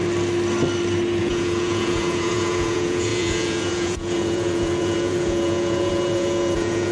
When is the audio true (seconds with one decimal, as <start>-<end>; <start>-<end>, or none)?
0.0-1.2